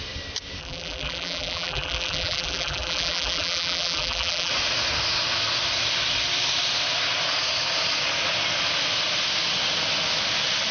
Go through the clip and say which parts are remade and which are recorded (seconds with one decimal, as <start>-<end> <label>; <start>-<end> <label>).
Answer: 0.0-0.6 recorded; 0.6-4.5 remade; 4.5-10.7 recorded